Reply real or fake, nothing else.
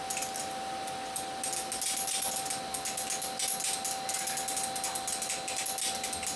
real